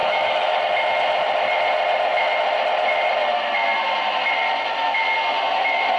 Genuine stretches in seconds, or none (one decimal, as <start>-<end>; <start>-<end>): 0.6-6.0